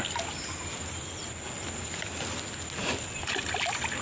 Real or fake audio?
real